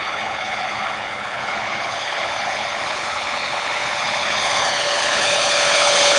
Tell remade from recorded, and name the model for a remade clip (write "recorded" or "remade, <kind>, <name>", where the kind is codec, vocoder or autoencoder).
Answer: remade, codec, HILCodec